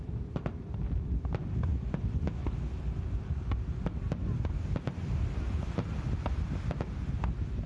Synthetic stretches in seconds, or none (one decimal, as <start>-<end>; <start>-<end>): none

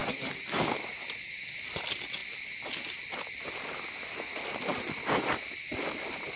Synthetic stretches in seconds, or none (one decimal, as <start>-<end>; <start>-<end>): 0.0-0.6

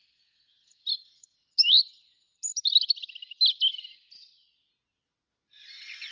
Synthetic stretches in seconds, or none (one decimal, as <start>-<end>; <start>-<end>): none

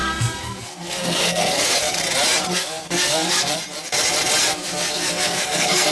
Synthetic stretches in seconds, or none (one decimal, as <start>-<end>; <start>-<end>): 0.0-2.0; 2.5-3.6; 4.4-5.9

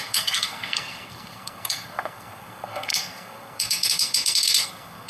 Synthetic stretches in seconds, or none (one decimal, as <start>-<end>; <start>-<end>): 0.0-5.1

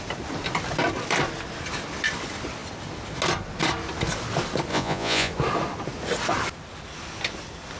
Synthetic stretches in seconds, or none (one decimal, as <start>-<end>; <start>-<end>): 4.7-5.3